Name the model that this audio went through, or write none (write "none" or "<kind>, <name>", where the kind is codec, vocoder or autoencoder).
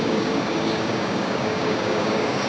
codec, DAC